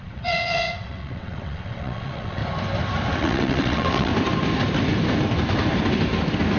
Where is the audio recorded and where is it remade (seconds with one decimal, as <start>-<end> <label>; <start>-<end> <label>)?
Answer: 0.0-2.4 remade; 2.4-3.1 recorded; 3.1-4.1 remade; 4.1-6.6 recorded